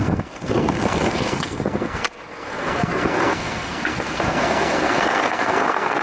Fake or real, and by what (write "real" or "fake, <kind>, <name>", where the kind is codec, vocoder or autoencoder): fake, codec, SNAC